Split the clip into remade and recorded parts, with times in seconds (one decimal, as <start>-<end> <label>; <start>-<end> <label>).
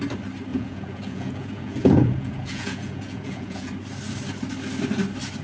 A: 0.0-0.5 recorded; 0.5-3.7 remade; 3.7-5.4 recorded